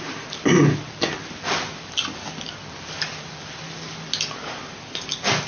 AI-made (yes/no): no